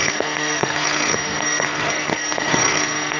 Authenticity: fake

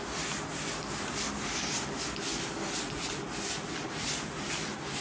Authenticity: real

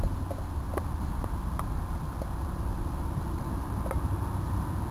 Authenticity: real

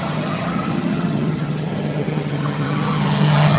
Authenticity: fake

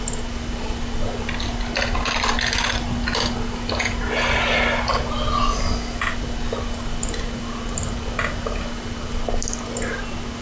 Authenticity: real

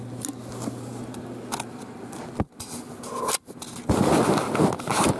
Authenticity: real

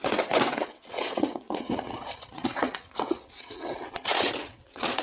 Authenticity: fake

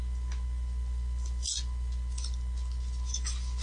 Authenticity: real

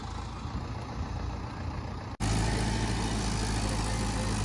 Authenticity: real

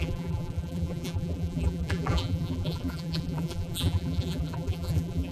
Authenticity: fake